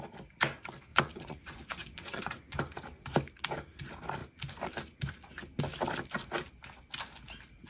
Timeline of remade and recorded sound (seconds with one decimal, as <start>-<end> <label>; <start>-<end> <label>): 0.0-0.9 recorded; 0.9-2.6 remade; 2.6-7.7 recorded